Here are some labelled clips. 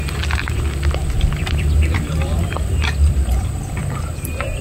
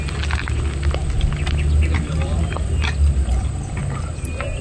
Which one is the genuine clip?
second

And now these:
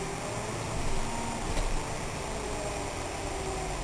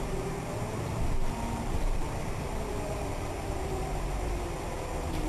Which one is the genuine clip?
first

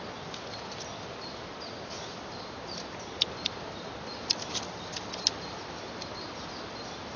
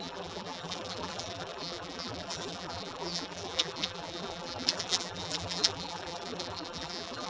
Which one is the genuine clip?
first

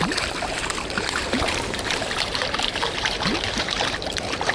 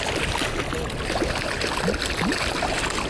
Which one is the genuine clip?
second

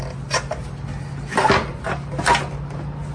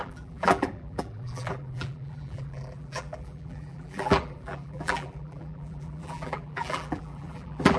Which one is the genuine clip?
first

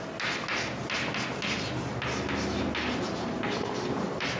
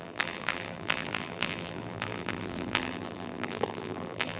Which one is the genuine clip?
first